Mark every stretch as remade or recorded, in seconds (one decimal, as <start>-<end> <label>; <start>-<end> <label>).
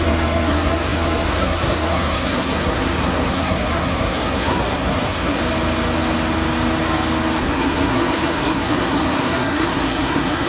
0.0-5.4 remade; 5.4-7.4 recorded; 7.4-10.5 remade